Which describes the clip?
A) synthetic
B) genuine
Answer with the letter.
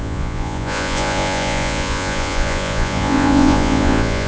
A